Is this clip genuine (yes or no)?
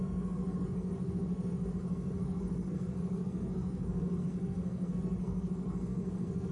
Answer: no